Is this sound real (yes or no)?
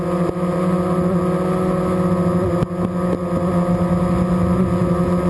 yes